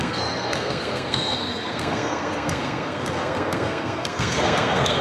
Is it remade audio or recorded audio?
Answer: remade